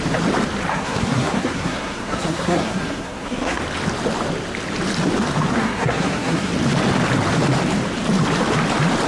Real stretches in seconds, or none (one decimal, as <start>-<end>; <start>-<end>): 0.0-0.7; 3.6-5.5; 6.5-9.1

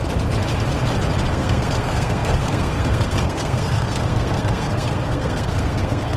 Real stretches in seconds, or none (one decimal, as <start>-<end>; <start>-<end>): 0.0-1.3

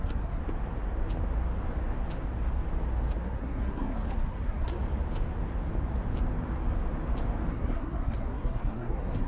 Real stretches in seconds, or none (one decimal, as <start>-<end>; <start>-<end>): 0.4-3.2; 4.8-7.5

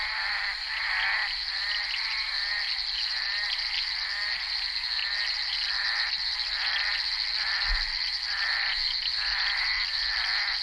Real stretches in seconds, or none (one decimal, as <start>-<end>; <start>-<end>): 0.0-10.6

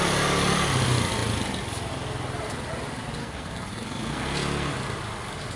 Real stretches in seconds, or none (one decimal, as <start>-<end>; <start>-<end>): 0.0-3.2; 4.7-5.6

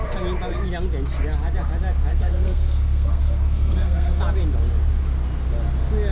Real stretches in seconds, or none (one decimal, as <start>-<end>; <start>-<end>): 0.0-2.1; 4.2-6.1